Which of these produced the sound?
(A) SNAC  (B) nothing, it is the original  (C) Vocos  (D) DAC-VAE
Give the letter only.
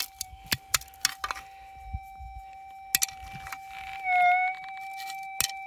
B